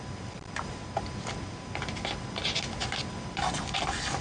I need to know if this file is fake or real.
real